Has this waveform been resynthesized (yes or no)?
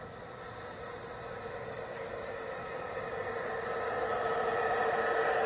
no